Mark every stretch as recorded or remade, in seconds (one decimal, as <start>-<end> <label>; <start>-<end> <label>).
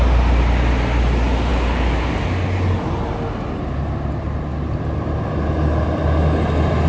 0.0-6.9 recorded